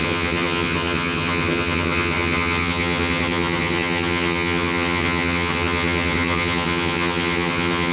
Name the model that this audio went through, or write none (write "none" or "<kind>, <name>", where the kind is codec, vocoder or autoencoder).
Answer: vocoder, HiFi-GAN